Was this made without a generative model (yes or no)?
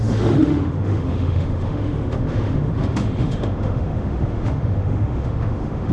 no